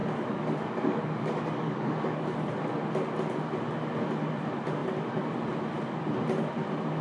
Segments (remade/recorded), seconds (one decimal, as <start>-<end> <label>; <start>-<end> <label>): 0.0-2.5 remade; 2.5-7.0 recorded